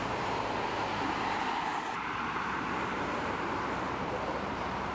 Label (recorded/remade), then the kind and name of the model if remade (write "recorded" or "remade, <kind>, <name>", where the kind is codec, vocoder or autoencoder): remade, vocoder, BigVGAN v2